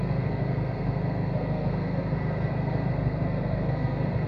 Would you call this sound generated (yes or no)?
yes